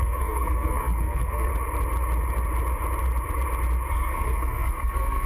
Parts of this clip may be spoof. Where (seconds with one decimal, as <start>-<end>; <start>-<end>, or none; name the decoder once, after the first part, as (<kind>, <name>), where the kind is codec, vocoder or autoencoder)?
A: 0.0-1.5 (codec, SNAC); 3.9-5.3